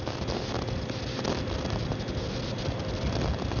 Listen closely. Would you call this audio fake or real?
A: real